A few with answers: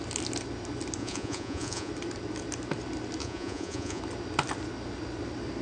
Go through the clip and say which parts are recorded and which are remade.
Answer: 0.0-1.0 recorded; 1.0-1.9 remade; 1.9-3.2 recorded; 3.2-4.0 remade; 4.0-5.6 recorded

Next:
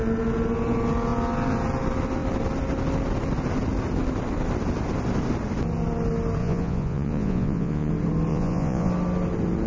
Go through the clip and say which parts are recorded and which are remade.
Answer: 0.0-6.4 recorded; 6.4-7.9 remade; 7.9-8.3 recorded; 8.3-8.9 remade; 8.9-9.7 recorded

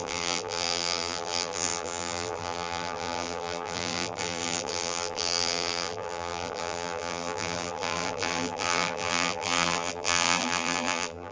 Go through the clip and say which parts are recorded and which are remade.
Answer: 0.0-11.3 remade

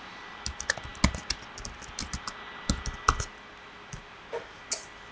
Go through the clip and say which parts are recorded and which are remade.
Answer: 0.0-5.1 recorded

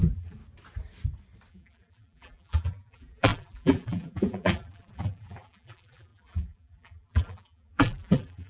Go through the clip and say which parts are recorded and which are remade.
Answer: 0.0-0.4 remade; 0.4-1.5 recorded; 1.5-8.5 remade

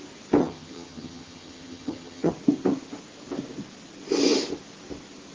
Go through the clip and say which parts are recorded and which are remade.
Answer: 0.0-0.4 recorded; 0.4-2.3 remade; 2.3-5.3 recorded

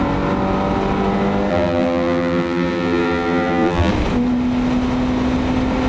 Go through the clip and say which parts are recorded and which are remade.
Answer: 0.0-1.5 recorded; 1.5-3.9 remade; 3.9-5.9 recorded

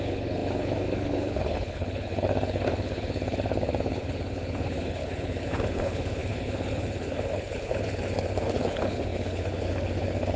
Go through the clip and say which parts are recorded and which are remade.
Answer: 0.0-10.4 remade